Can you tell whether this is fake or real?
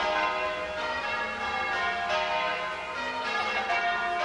real